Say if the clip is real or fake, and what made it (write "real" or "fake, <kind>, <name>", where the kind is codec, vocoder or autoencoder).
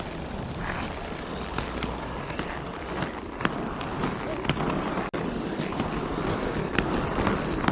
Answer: real